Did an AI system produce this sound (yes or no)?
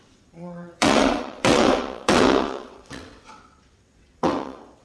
yes